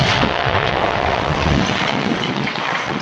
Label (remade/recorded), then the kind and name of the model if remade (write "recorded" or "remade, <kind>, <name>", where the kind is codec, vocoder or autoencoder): remade, vocoder, WaveNeXt